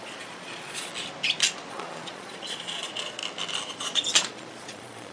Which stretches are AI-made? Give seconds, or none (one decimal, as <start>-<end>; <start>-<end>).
0.0-0.9; 1.7-3.2; 3.7-5.1